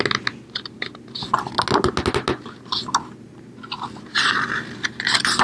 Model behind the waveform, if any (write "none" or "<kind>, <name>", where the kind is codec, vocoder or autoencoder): none